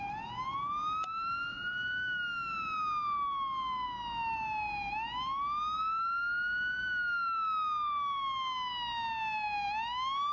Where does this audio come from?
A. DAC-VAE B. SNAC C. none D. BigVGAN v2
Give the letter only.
C